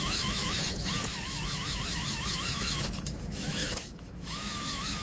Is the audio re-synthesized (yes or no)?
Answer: yes